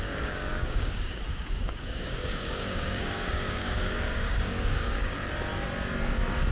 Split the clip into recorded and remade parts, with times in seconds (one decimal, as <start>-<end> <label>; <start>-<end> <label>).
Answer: 0.0-5.2 remade; 5.2-6.5 recorded